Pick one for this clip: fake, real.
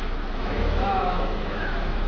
fake